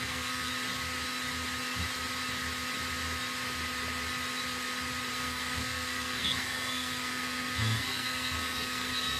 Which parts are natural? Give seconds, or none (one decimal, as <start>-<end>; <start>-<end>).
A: 0.5-5.1